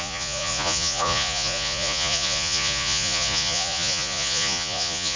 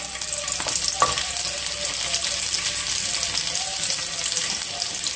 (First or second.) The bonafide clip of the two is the second